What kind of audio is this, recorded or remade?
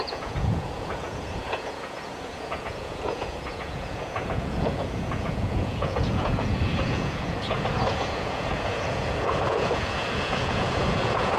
remade